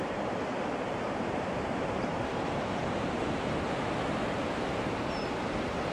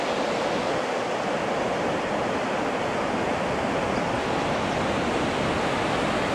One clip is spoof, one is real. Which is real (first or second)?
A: second